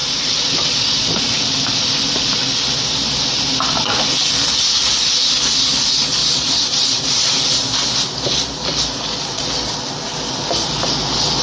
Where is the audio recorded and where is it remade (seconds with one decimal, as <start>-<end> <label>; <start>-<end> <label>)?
0.0-1.2 remade; 1.2-6.2 recorded; 6.2-7.6 remade; 7.6-11.4 recorded